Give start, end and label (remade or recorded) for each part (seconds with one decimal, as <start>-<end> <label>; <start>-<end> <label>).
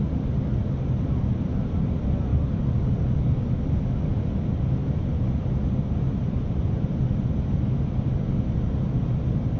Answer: 0.0-9.6 recorded